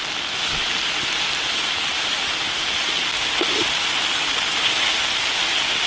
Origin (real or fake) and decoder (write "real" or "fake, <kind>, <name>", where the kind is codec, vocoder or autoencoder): real